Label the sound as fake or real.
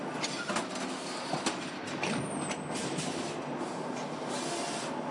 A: real